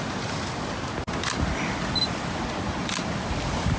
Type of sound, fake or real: real